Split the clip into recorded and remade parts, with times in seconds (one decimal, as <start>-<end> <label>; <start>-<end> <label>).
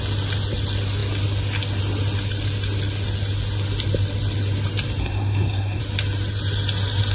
0.0-5.0 recorded; 5.0-5.8 remade; 5.8-7.1 recorded